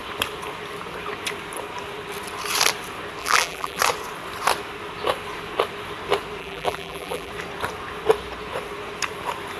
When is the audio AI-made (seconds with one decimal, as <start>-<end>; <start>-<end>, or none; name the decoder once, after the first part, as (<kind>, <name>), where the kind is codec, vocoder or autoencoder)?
3.2-3.8 (vocoder, BigVGAN v2); 6.4-7.3